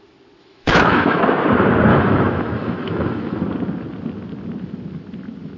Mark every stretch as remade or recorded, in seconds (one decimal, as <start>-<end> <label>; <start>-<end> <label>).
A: 0.0-0.4 recorded; 0.4-1.2 remade; 1.2-1.9 recorded; 1.9-3.4 remade; 3.4-5.6 recorded